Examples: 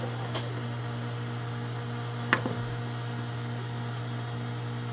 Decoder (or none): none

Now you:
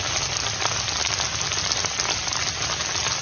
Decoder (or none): none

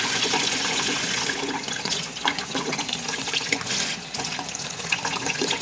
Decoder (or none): vocoder, Vocos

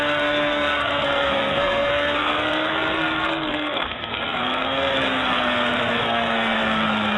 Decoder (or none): codec, SNAC